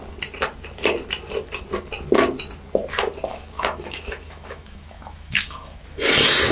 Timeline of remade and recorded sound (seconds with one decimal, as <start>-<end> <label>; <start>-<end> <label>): 0.0-3.3 recorded; 3.3-5.8 remade; 5.8-6.5 recorded